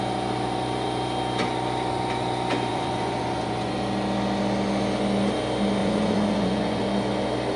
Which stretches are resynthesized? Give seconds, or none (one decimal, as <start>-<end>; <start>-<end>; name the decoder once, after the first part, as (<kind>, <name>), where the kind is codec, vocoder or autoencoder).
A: 2.7-3.7 (vocoder, Vocos); 5.8-6.8